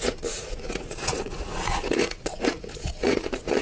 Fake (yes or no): yes